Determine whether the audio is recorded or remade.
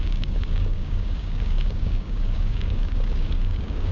remade